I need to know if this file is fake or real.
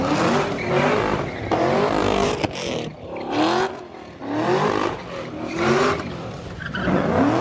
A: real